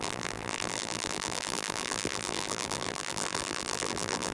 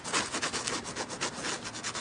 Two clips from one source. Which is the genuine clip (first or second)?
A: second